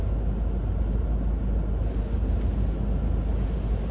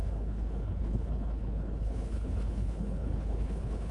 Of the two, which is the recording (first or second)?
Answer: first